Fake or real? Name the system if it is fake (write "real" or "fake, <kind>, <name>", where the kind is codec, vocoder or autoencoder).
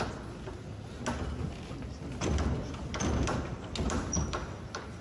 real